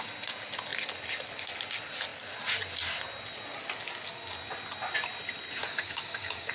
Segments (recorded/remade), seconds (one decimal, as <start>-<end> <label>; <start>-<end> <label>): 0.0-5.6 recorded; 5.6-6.5 remade